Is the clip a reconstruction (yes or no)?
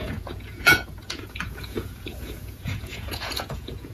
yes